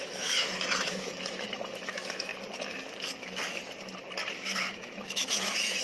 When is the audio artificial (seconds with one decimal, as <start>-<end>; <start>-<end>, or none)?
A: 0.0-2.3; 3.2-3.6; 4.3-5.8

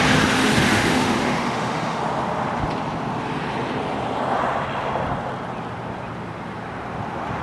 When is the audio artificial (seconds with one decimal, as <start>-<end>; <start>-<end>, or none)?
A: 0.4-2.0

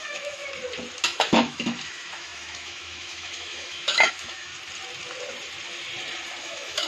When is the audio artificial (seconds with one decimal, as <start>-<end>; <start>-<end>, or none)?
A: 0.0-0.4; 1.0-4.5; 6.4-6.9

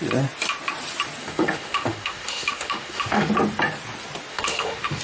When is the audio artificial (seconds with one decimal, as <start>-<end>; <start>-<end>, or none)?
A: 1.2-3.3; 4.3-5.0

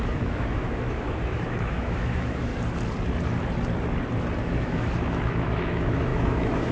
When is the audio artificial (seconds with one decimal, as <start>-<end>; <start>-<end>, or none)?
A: 0.0-2.5; 4.4-6.7